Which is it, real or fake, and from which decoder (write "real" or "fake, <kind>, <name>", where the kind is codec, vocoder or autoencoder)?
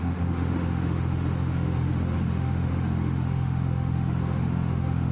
fake, autoencoder, DAC-VAE